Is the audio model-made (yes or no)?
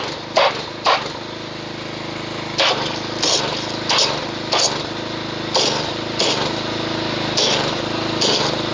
no